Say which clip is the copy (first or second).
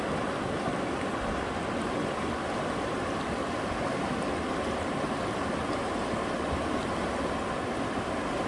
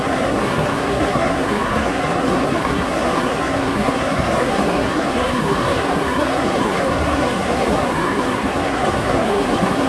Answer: second